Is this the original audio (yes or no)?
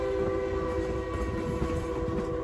yes